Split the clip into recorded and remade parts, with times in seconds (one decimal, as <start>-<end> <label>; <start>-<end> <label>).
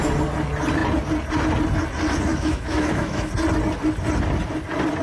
0.0-2.3 recorded; 2.3-3.3 remade; 3.3-5.0 recorded